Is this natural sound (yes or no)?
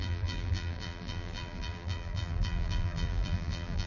no